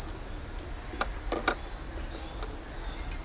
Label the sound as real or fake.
real